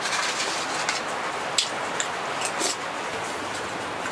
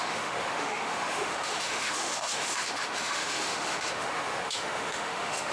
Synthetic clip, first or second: second